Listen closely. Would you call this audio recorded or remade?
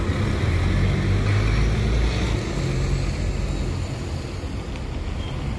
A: recorded